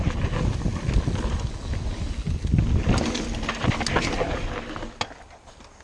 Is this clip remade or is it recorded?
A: recorded